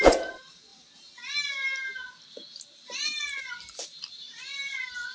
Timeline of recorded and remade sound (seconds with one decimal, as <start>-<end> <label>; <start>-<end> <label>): 0.0-0.7 remade; 0.7-3.4 recorded; 3.4-5.1 remade